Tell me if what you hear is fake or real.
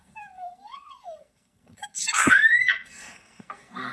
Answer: fake